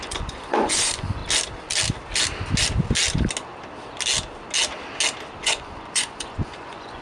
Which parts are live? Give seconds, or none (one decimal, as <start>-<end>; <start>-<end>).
1.2-5.4